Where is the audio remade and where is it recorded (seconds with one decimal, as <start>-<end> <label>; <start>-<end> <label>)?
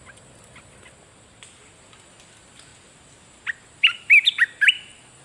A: 0.0-5.2 recorded